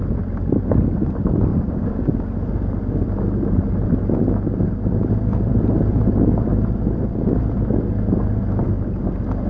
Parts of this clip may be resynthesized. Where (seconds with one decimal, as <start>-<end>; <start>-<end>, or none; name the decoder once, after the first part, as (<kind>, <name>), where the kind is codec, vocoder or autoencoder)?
1.5-2.1 (codec, DAC)